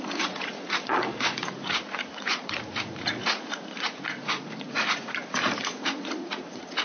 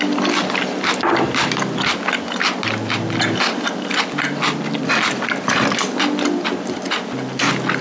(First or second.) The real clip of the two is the second